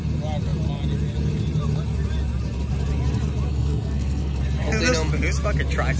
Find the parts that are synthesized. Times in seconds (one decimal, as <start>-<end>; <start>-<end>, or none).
3.5-4.4

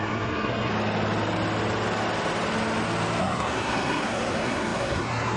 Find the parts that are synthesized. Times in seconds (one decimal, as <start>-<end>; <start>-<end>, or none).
0.0-0.7; 3.2-5.4